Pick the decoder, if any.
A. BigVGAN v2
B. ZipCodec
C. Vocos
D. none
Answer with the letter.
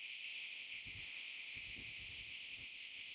B